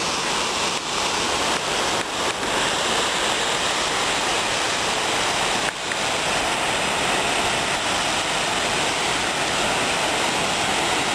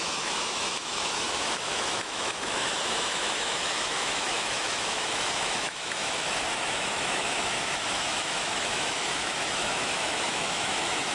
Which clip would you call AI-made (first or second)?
second